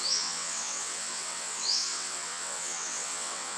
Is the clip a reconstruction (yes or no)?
yes